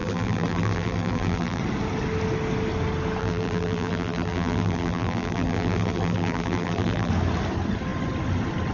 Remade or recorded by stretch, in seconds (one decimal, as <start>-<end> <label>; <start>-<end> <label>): 0.0-1.6 remade; 1.6-3.2 recorded; 3.2-7.1 remade; 7.1-8.7 recorded